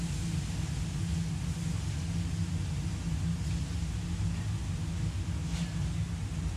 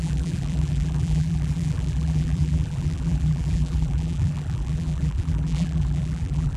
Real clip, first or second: first